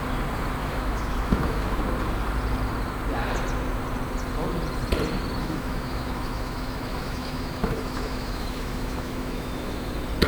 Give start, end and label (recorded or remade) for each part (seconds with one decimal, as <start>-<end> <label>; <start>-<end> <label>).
0.0-0.6 recorded; 0.6-1.8 remade; 1.8-5.4 recorded; 5.4-9.9 remade; 9.9-10.3 recorded